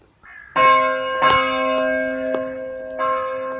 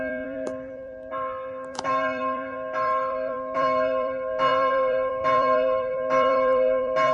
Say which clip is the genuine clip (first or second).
first